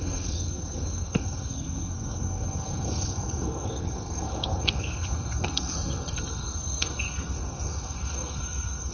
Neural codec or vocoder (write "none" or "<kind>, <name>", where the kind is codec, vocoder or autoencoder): codec, SNAC